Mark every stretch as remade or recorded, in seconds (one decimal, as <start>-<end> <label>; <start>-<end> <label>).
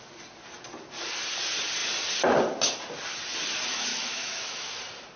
0.0-3.9 recorded; 3.9-4.8 remade; 4.8-5.2 recorded